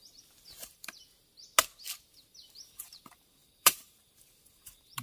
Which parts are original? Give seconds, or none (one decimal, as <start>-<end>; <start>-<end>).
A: 0.0-0.7; 1.3-2.3